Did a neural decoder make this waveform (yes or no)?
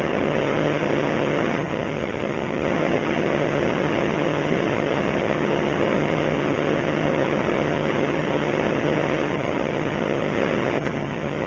yes